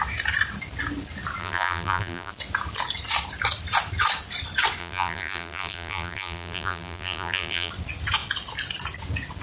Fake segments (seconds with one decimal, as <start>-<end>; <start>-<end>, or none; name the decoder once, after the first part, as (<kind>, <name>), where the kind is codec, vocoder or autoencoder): 1.4-2.3 (vocoder, BigVGAN v2); 4.8-7.7

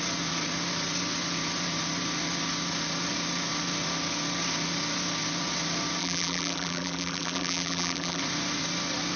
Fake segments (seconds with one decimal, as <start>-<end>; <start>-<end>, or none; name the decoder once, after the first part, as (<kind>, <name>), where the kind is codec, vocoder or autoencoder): 6.0-8.2 (vocoder, BigVGAN v2)

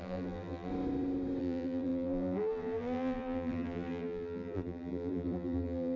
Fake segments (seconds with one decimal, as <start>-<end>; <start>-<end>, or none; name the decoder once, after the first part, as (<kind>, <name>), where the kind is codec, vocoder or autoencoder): 0.0-0.7 (vocoder, BigVGAN v2); 1.4-6.0

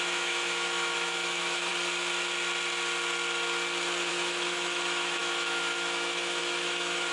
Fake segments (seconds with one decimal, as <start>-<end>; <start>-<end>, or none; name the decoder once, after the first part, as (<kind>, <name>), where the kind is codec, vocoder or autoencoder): 0.0-1.7 (autoencoder, DAC-VAE); 4.1-7.1

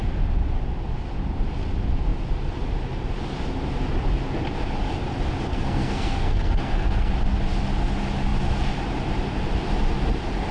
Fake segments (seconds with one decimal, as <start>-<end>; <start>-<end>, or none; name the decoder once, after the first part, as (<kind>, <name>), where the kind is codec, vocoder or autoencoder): 5.5-7.1 (codec, SNAC)

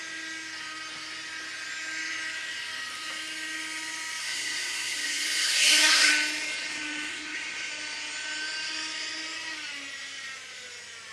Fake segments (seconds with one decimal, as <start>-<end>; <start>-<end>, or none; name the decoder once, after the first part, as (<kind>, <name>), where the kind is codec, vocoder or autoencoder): 4.2-6.1 (codec, SNAC); 7.1-7.7

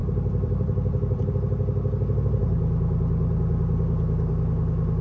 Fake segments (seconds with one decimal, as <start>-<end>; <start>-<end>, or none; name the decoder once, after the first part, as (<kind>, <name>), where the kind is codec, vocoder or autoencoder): 0.0-1.3 (vocoder, BigVGAN v2)